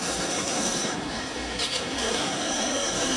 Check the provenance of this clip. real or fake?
fake